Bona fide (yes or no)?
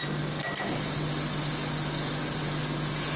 yes